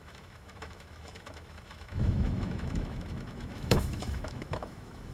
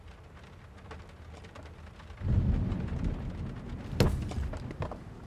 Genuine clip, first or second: second